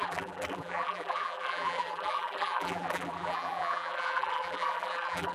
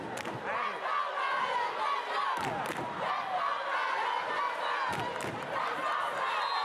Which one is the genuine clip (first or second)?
second